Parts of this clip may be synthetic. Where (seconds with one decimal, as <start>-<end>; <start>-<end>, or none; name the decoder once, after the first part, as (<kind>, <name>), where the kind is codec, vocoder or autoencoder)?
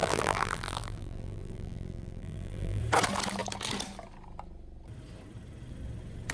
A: 0.0-2.8 (vocoder, BigVGAN v2)